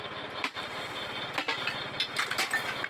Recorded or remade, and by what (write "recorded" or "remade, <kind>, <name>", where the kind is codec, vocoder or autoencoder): recorded